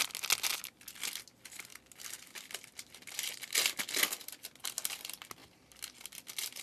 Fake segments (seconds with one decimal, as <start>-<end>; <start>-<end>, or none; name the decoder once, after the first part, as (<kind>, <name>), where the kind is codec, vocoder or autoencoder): none